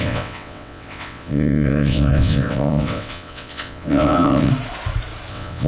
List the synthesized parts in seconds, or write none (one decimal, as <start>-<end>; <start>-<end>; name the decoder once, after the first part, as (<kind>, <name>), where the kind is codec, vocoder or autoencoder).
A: 0.0-4.5 (vocoder, WaveNeXt); 5.3-5.7